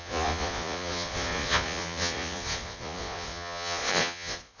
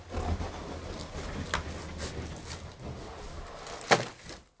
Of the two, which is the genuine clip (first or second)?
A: second